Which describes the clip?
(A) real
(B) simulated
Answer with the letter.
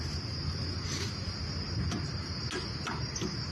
A